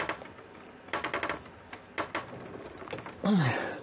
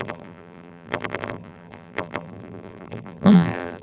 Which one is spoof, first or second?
second